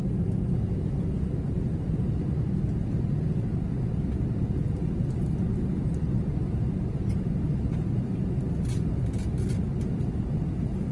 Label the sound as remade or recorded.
recorded